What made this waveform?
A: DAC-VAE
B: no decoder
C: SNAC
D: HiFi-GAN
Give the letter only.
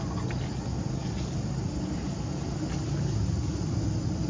B